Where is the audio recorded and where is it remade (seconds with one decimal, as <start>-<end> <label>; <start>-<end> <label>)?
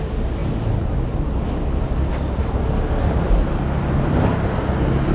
0.0-5.1 recorded